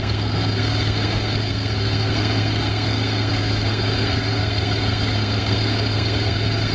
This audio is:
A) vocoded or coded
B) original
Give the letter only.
A